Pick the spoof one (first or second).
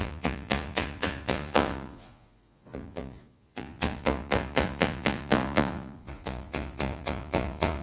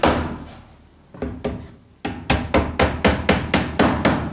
first